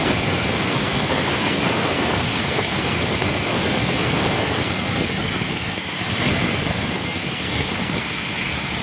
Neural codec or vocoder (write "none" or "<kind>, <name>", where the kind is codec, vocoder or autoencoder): codec, SNAC